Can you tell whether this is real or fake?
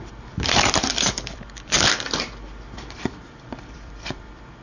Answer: fake